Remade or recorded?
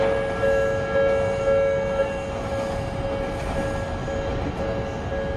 recorded